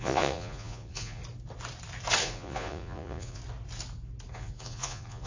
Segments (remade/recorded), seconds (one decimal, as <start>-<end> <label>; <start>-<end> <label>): 0.0-1.2 remade; 1.2-2.2 recorded; 2.2-3.4 remade; 3.4-4.3 recorded; 4.3-5.3 remade